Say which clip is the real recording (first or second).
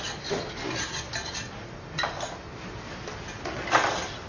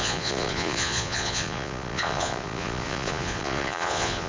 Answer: first